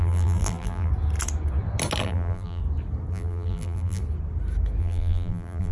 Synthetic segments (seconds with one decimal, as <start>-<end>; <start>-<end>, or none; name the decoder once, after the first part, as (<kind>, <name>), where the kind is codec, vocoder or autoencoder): 0.0-0.9 (vocoder, BigVGAN v2); 2.0-2.6; 3.1-4.0; 4.8-5.7